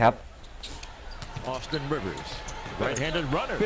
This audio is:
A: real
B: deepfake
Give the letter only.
A